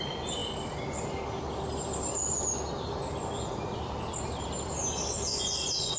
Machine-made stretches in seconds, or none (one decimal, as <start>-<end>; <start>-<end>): 5.3-6.0